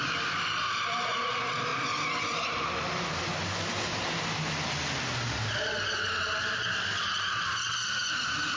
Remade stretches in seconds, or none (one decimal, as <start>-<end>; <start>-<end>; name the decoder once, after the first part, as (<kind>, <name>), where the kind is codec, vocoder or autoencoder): none